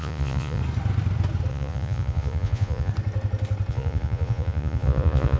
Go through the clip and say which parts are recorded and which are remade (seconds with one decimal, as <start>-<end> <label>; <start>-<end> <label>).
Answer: 0.0-0.6 remade; 0.6-1.5 recorded; 1.5-2.9 remade; 2.9-3.7 recorded; 3.7-5.4 remade